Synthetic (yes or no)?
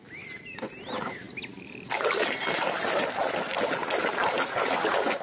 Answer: no